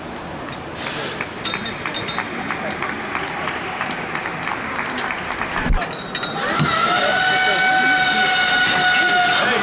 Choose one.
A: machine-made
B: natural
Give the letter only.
B